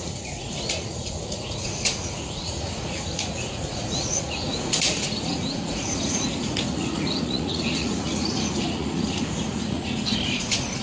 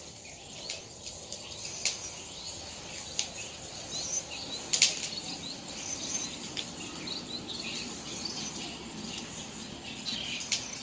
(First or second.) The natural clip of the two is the second